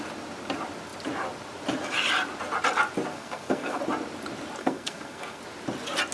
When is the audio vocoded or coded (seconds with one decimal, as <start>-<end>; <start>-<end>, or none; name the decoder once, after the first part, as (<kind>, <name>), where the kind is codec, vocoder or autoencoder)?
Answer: 3.1-3.8 (codec, SNAC); 4.6-5.4